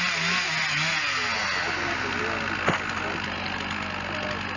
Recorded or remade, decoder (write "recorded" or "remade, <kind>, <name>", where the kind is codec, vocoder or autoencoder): recorded